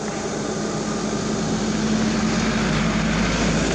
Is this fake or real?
real